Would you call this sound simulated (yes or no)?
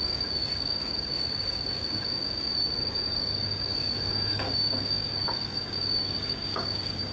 yes